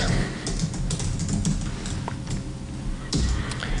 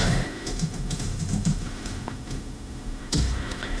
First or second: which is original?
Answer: first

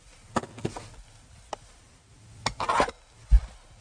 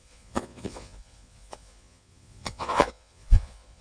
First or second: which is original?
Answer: first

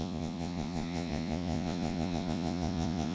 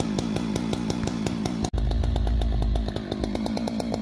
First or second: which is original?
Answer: second